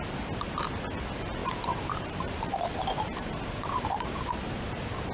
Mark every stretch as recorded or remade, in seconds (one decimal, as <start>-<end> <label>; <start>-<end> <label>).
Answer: 0.0-1.4 recorded; 1.4-3.6 remade; 3.6-5.1 recorded